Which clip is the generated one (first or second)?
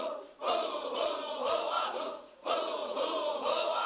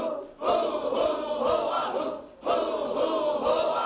first